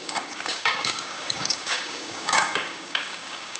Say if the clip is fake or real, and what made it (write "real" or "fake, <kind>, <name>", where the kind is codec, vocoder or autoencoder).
fake, codec, DAC